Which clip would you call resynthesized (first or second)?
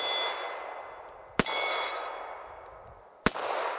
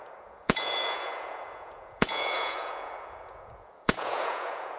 second